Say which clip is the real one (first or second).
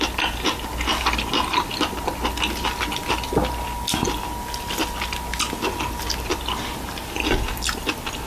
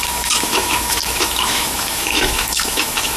first